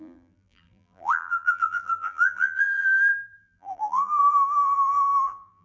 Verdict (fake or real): fake